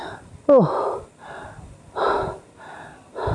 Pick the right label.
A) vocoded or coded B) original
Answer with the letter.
B